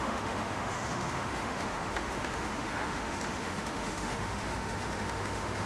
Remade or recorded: remade